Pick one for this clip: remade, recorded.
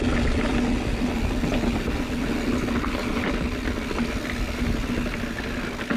recorded